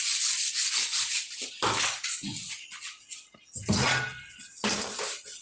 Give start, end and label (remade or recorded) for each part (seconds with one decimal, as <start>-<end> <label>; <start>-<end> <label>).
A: 0.0-5.4 recorded